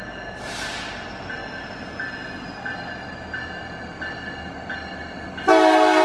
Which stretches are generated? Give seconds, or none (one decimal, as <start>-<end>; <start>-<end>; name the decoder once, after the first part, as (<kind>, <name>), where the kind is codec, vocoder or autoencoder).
none